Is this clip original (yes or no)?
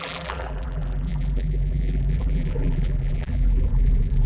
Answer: no